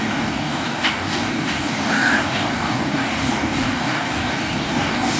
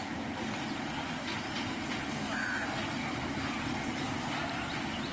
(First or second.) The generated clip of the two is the first